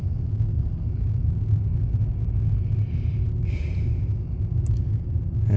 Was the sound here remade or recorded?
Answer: recorded